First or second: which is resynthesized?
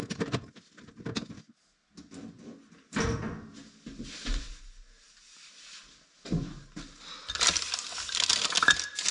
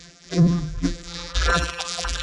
second